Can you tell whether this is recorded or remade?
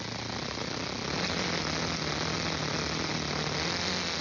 recorded